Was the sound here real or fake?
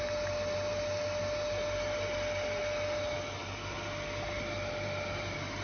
real